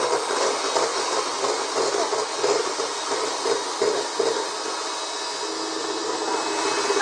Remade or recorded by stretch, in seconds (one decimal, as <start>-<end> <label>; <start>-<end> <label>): 0.0-7.0 recorded